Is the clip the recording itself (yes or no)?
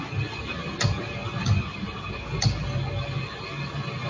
yes